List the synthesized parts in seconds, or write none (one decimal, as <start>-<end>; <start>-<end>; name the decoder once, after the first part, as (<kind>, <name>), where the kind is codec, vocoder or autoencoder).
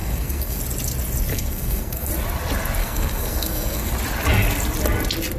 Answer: 0.0-0.6 (codec, SNAC); 1.3-2.1; 2.8-3.9